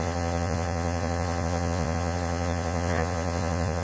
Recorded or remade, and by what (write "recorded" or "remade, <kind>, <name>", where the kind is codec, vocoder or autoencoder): remade, vocoder, Vocos